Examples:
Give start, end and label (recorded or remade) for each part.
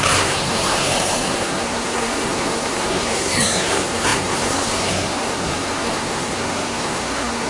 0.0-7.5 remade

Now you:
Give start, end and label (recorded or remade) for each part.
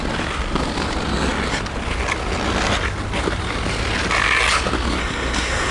0.0-5.0 recorded; 5.0-5.7 remade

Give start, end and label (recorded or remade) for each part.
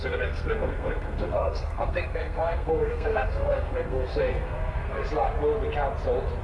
0.0-5.0 remade; 5.0-6.4 recorded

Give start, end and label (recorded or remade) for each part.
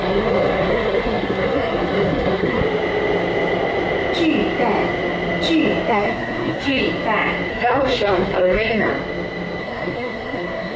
0.0-2.6 remade; 2.6-5.9 recorded; 5.9-6.8 remade; 6.8-7.5 recorded; 7.5-8.9 remade; 8.9-9.6 recorded; 9.6-10.8 remade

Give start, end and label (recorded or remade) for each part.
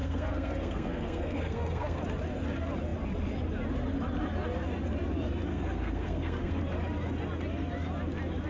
0.0-2.0 remade; 2.0-5.5 recorded; 5.5-6.6 remade; 6.6-8.5 recorded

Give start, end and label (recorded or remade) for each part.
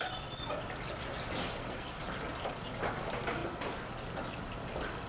0.0-1.4 recorded; 1.4-2.0 remade; 2.0-5.1 recorded